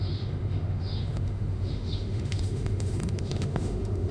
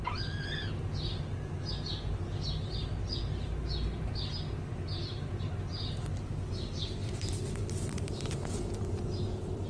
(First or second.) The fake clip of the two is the first